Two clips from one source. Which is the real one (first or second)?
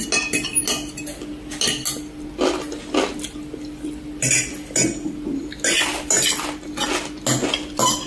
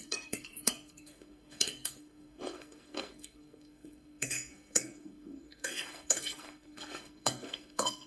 first